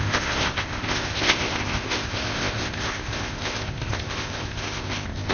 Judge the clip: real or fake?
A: fake